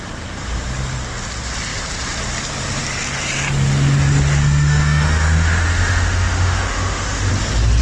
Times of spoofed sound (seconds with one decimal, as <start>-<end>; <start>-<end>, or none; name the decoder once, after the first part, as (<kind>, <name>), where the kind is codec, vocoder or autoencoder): 4.4-7.3 (autoencoder, DAC-VAE)